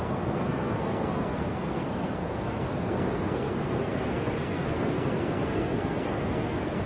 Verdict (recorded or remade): remade